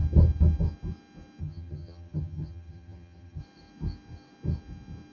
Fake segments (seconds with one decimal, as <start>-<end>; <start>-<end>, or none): 1.4-3.4

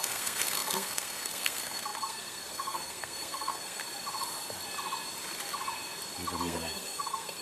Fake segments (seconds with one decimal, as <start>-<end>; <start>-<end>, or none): 0.0-3.8; 6.4-7.4

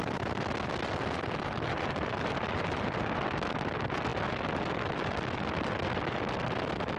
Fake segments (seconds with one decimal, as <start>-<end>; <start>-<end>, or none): none

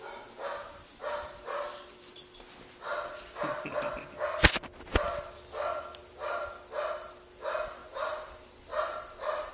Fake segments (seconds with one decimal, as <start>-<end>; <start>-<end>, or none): 0.9-2.2; 7.8-9.5

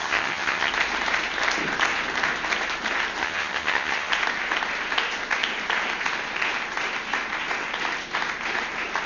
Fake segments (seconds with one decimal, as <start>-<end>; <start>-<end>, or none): 0.0-0.7; 3.2-4.1

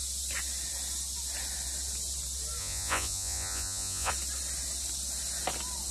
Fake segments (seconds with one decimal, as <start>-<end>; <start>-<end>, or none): 2.6-4.1

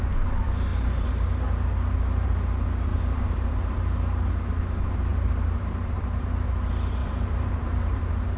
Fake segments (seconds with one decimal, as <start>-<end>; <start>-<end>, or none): 2.9-3.8; 5.1-6.3; 7.0-8.0